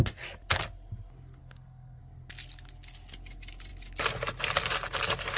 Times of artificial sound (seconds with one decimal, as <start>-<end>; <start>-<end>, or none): 1.4-2.0